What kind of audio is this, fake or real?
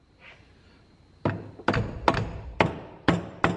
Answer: real